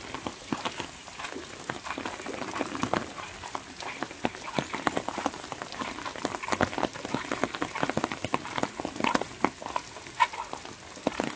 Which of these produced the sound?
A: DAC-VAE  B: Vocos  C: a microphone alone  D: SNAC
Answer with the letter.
C